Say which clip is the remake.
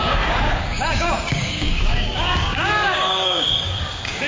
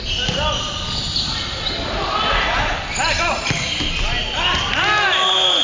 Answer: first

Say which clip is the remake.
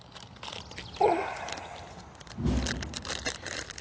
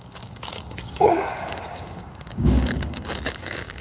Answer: second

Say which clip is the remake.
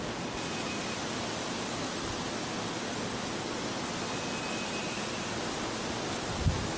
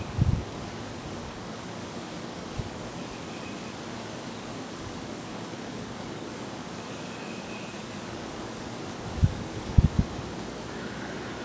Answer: second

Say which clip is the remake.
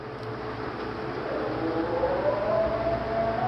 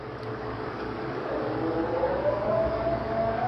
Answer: second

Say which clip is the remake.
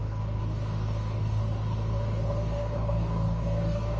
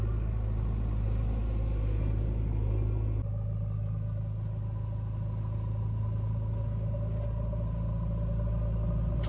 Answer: first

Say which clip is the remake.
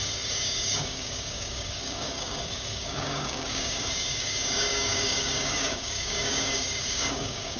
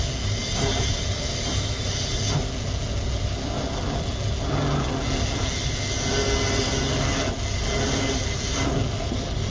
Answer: first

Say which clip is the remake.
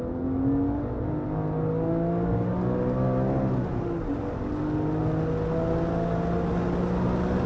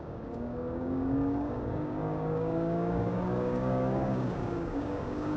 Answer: second